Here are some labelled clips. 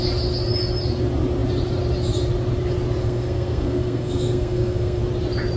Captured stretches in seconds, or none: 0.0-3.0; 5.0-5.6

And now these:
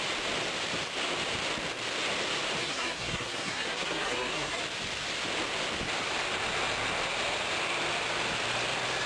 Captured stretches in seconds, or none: 0.0-2.6; 4.6-9.1

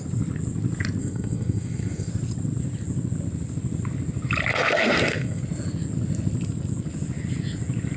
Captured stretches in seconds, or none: 0.0-1.0; 2.1-4.5; 5.4-8.0

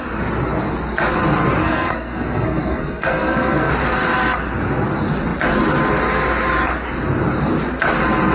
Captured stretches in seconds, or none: 0.0-1.6; 3.7-8.3